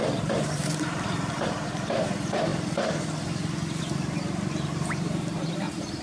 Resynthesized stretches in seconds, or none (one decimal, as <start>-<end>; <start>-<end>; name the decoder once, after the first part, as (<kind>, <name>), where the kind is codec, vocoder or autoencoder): 0.0-2.5 (vocoder, BigVGAN v2); 3.8-6.0